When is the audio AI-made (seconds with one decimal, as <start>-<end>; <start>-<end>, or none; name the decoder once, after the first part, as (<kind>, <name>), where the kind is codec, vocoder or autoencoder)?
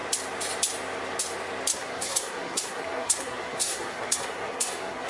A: 1.7-5.1 (codec, SNAC)